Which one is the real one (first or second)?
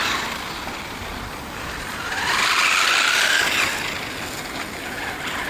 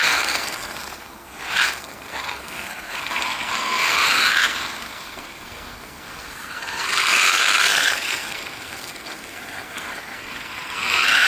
first